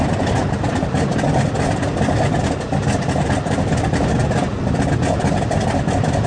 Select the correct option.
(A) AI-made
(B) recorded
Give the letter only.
B